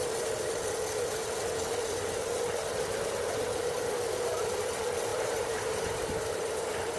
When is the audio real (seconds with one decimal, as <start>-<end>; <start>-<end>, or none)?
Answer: 0.0-1.8; 2.4-5.1